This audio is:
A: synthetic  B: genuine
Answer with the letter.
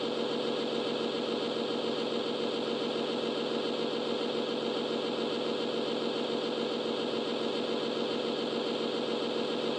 B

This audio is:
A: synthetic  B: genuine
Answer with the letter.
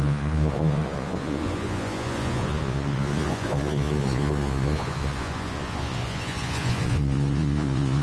A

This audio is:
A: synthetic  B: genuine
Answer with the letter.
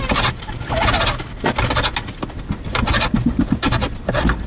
B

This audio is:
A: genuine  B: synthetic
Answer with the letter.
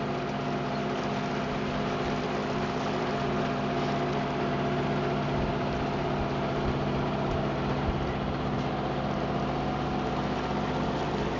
A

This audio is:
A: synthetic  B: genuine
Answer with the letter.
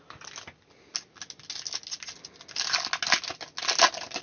B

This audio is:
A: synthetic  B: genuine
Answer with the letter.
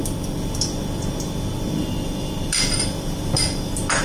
A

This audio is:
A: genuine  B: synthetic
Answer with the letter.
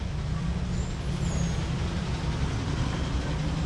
A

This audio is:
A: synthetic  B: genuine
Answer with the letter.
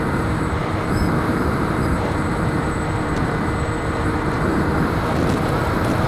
A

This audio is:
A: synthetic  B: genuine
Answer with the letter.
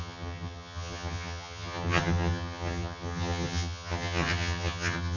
A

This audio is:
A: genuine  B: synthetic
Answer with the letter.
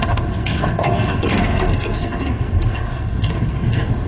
B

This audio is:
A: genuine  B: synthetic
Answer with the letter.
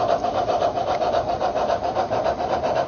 B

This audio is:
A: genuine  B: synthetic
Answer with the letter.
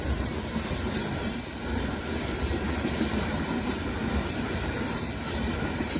B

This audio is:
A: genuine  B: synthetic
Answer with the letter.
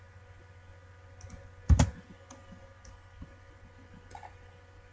A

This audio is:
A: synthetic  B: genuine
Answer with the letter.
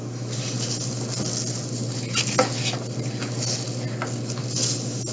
B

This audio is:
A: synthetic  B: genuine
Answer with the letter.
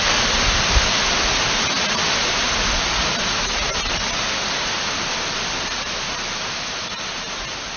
B